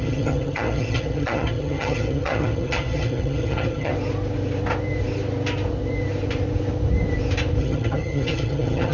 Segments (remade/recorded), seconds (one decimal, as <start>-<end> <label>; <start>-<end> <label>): 0.0-3.9 remade; 3.9-7.6 recorded; 7.6-8.9 remade